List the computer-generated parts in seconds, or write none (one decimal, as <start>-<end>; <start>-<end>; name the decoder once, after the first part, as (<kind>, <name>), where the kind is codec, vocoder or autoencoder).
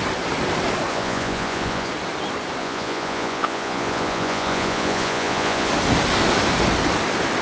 0.9-1.9 (vocoder, Vocos); 2.6-5.7